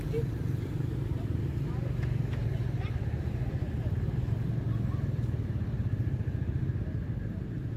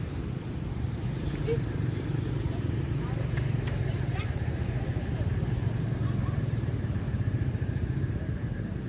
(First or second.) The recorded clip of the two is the first